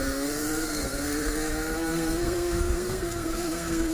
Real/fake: fake